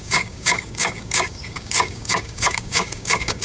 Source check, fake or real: fake